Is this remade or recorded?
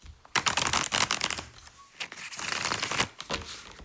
recorded